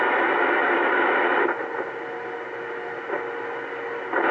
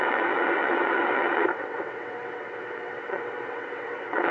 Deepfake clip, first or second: second